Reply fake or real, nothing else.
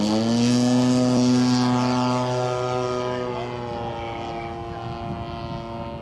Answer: real